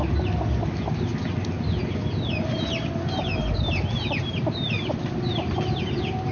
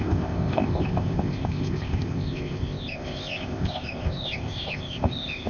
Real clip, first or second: first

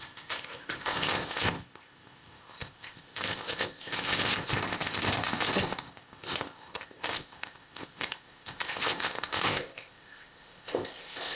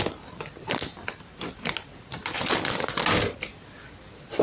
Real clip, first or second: second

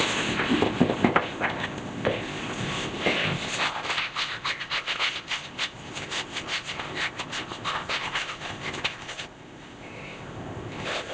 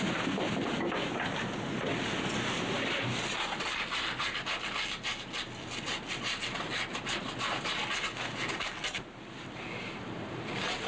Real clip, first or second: second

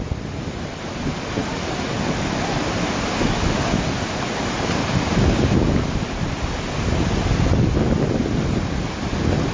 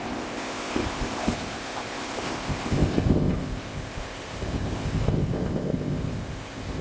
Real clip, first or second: first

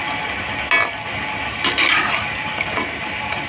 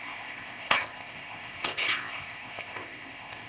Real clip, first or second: first